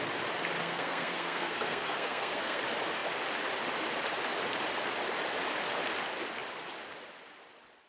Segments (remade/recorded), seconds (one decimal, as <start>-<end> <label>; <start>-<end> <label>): 0.0-0.6 recorded; 0.6-2.6 remade; 2.6-7.9 recorded